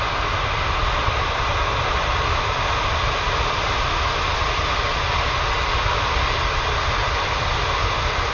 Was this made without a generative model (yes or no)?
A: yes